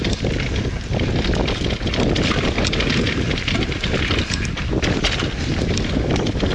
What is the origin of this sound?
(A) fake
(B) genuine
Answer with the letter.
B